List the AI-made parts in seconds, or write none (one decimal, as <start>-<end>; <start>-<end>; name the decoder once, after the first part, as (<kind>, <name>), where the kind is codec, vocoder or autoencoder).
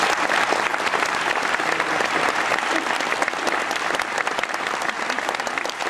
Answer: none